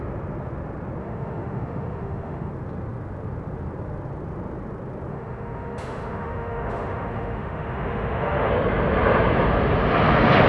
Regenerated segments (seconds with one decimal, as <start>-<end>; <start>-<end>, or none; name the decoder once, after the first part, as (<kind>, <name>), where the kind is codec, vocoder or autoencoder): 1.0-2.5 (autoencoder, DAC-VAE); 5.1-8.5